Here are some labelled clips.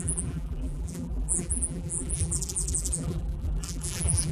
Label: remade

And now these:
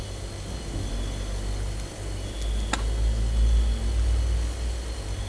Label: recorded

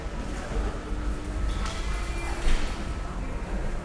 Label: recorded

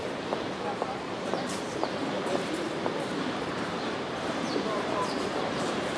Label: remade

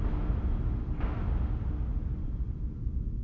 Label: recorded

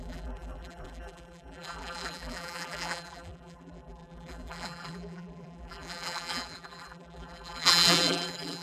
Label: remade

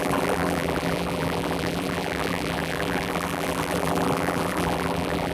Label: remade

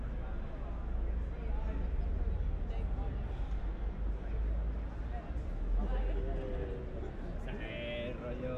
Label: recorded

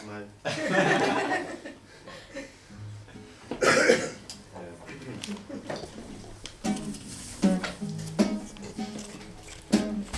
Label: recorded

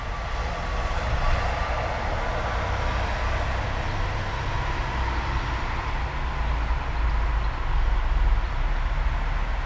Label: recorded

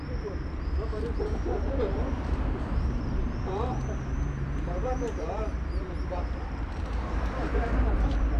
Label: remade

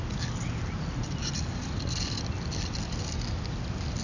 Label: recorded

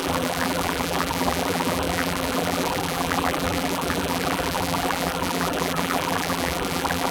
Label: remade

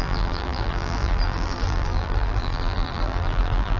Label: remade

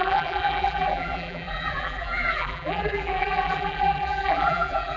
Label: remade